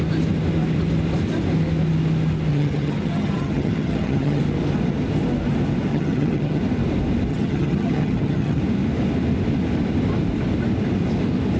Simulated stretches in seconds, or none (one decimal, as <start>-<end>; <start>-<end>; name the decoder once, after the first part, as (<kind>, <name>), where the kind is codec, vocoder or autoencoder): 2.5-4.4 (vocoder, HiFi-GAN); 5.9-6.6; 7.3-8.6